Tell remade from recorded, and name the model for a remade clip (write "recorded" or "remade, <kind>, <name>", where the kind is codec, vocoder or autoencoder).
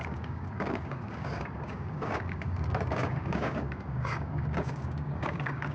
remade, codec, DAC